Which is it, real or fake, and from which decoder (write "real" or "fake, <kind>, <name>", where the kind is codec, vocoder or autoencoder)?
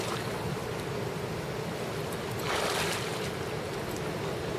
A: real